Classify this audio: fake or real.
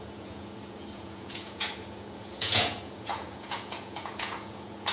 fake